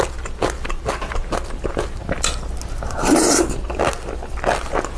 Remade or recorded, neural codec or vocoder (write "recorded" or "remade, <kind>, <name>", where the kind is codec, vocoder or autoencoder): recorded